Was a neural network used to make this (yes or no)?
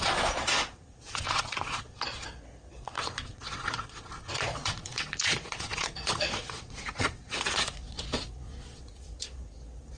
yes